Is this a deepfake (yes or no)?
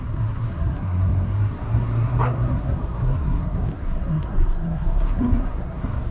yes